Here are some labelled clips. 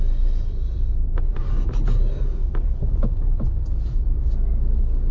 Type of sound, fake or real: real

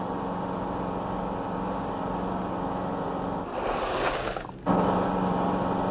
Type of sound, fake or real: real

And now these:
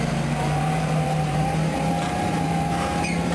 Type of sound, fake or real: fake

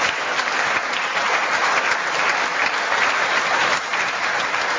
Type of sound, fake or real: real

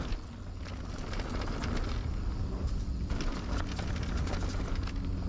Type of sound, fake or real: real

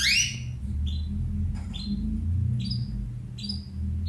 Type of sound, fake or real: real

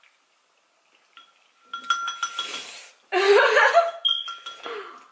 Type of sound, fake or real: real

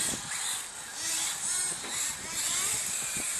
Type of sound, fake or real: real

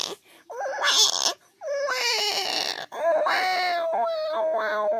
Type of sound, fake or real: real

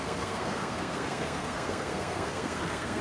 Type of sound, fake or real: fake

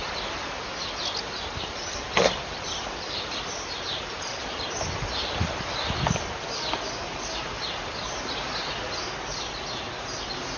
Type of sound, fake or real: real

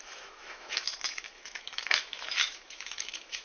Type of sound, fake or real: fake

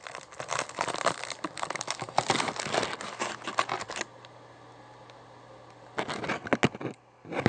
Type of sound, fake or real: real